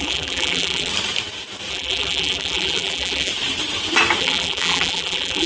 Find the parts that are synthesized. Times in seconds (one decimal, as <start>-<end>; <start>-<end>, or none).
0.0-0.9; 1.7-3.3; 4.2-5.5